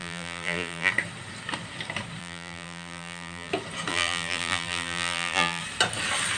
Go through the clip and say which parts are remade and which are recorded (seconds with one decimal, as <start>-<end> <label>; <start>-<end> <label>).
0.0-0.9 remade; 0.9-2.2 recorded; 2.2-3.5 remade; 3.5-3.9 recorded; 3.9-5.6 remade; 5.6-6.4 recorded